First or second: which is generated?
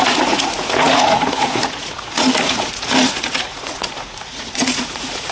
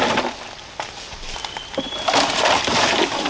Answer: first